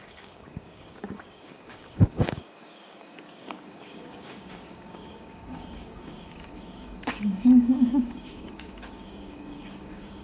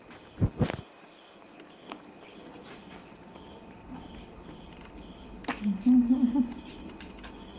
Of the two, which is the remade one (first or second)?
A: first